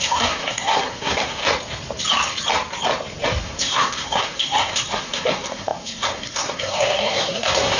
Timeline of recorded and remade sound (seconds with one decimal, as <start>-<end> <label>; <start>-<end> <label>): 0.0-1.4 remade; 1.4-3.4 recorded; 3.4-7.8 remade